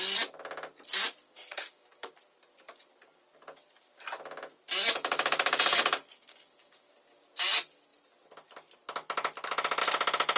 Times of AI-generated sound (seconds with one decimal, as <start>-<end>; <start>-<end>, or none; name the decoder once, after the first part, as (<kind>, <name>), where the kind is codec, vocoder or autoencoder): 1.2-2.1 (codec, DAC); 4.9-6.9